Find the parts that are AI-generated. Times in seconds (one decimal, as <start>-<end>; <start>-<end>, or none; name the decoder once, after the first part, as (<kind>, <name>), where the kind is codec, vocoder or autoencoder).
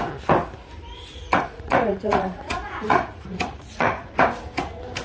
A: 1.1-4.1 (vocoder, Vocos)